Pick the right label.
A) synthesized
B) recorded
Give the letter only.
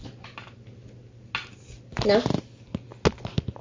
B